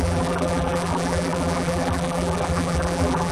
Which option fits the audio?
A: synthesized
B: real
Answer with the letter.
A